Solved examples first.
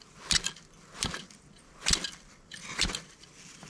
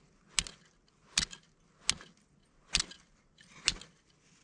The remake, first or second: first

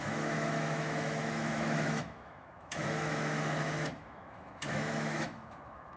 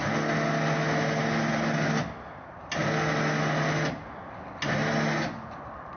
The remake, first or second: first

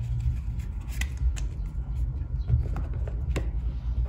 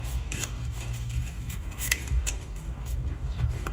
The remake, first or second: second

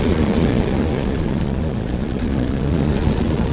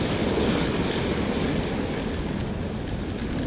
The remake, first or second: first